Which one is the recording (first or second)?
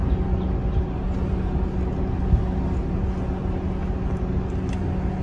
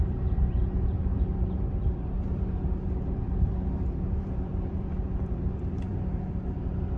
first